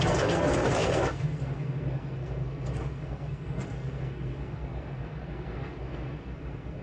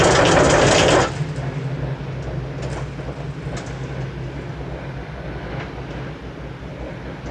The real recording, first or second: second